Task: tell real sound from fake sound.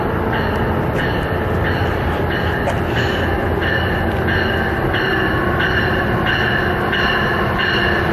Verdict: real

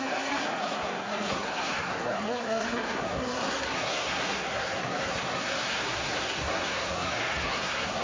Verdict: fake